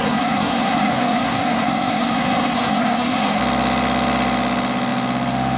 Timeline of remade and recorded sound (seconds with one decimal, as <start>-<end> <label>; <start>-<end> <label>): 0.0-3.4 remade; 3.4-5.6 recorded